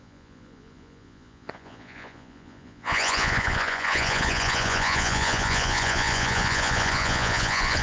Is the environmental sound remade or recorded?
remade